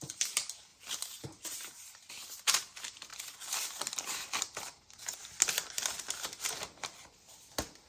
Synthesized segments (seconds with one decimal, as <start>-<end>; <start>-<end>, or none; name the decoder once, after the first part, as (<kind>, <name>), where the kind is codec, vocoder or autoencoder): 3.1-4.8 (vocoder, BigVGAN v2)